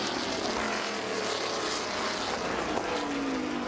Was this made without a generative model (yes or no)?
yes